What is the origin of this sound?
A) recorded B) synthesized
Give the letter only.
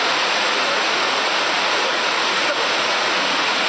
B